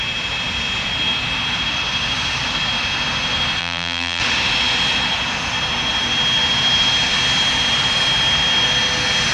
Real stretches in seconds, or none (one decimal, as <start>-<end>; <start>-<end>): 0.0-3.6; 4.2-9.3